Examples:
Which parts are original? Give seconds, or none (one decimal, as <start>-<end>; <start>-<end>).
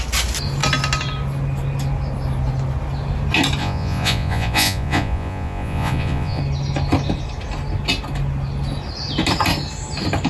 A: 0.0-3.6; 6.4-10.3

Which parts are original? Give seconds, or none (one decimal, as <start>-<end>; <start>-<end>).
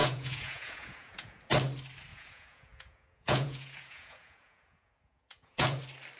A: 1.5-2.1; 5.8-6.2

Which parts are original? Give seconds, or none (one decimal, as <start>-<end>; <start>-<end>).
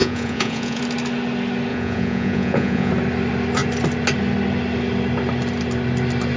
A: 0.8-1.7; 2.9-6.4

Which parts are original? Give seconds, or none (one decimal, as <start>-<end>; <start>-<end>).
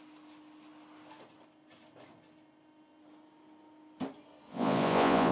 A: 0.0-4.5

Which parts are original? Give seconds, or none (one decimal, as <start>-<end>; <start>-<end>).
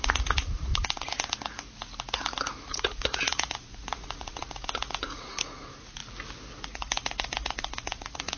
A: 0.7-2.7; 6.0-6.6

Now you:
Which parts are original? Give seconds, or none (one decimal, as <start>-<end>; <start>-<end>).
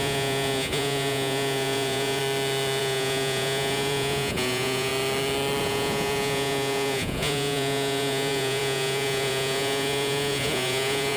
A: 2.2-2.8; 4.9-5.6